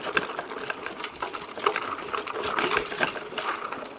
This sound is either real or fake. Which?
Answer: real